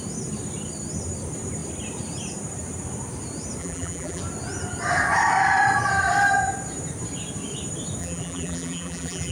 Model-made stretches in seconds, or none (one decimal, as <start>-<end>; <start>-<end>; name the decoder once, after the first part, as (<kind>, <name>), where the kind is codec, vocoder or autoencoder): 3.6-4.2 (vocoder, BigVGAN v2); 8.0-9.3